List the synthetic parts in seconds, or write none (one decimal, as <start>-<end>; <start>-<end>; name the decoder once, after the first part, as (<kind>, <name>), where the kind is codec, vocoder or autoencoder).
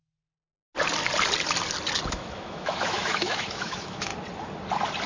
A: 2.1-4.1 (autoencoder, DAC-VAE)